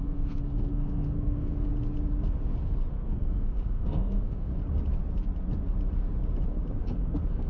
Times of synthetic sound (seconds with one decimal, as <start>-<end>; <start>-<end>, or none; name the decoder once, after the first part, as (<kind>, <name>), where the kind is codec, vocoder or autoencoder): 0.0-1.7 (codec, SNAC); 2.9-4.5; 6.8-7.5